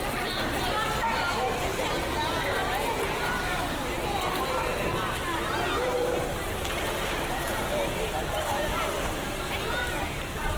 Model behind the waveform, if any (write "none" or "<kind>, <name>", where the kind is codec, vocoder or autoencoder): none